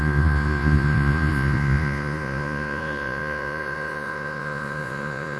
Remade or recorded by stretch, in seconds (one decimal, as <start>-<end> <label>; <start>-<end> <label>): 0.0-5.4 remade